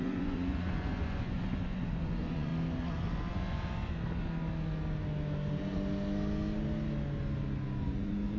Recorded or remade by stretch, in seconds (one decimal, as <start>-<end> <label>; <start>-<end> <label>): 0.0-2.5 remade; 2.5-3.3 recorded; 3.3-3.8 remade; 3.8-7.8 recorded; 7.8-8.4 remade